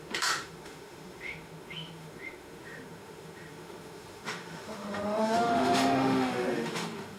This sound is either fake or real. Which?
fake